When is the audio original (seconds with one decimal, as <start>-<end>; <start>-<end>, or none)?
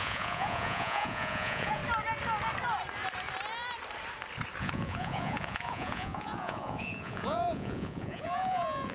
1.8-4.6